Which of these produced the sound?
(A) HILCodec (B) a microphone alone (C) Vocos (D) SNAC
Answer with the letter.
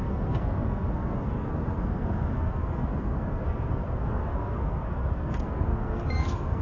D